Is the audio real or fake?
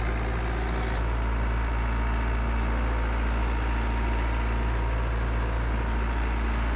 real